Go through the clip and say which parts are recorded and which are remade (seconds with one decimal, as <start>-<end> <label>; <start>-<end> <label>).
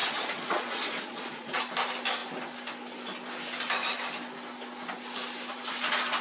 0.0-1.6 remade; 1.6-6.2 recorded